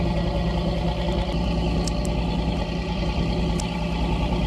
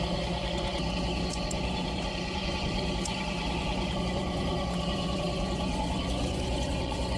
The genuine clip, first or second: first